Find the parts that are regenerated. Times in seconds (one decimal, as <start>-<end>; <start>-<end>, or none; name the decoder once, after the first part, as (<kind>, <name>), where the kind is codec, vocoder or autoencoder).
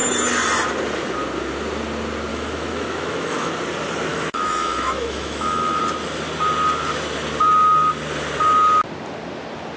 2.3-3.5 (autoencoder, DAC-VAE); 4.1-5.8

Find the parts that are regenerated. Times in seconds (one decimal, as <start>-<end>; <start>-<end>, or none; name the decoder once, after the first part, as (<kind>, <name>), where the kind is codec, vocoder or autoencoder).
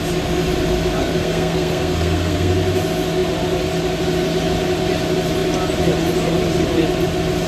1.0-2.5 (codec, SNAC)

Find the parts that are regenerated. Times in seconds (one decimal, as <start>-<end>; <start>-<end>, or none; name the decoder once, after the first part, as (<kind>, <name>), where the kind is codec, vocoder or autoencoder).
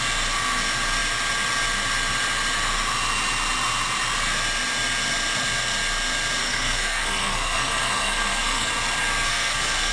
6.4-8.7 (codec, SNAC); 9.3-9.9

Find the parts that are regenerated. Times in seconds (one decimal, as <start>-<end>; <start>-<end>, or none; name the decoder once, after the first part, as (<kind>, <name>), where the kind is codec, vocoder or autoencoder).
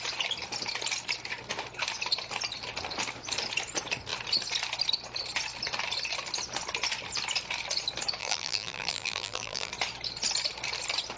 8.2-9.7 (vocoder, BigVGAN v2)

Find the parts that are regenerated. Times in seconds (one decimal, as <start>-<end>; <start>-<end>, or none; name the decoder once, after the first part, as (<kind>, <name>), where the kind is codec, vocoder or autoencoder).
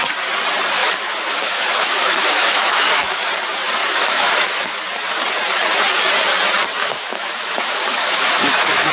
0.8-3.3 (autoencoder, DAC-VAE); 3.8-4.8; 6.8-8.9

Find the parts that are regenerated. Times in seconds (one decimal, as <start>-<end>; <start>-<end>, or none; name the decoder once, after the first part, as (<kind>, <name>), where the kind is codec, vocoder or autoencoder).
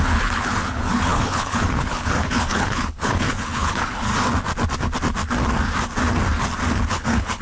0.0-4.1 (codec, HILCodec); 6.9-7.4